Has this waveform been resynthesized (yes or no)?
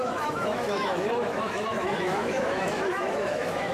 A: yes